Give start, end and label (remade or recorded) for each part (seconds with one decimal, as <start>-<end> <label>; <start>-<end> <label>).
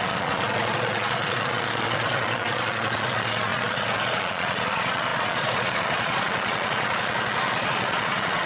0.0-8.5 remade